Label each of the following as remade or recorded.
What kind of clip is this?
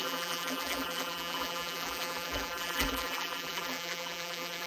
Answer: remade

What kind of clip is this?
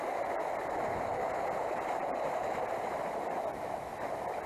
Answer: recorded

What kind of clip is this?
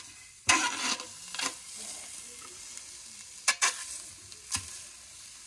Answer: recorded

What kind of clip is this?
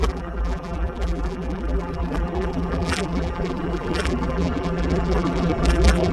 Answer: remade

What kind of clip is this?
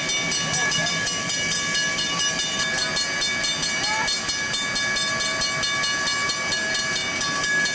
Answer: recorded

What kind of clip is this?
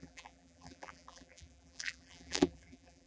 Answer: remade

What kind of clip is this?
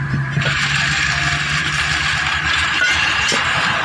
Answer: remade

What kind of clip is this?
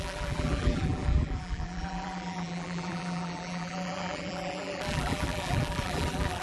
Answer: remade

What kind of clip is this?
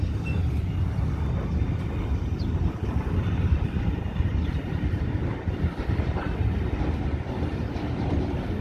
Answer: recorded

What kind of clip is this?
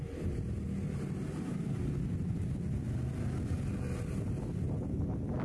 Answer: recorded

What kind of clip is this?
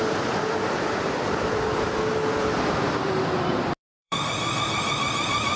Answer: remade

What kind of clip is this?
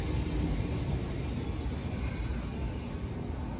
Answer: recorded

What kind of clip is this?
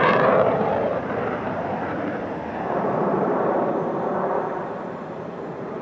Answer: remade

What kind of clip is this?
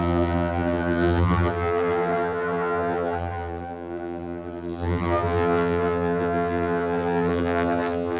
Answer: remade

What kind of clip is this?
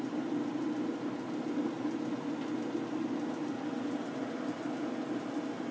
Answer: recorded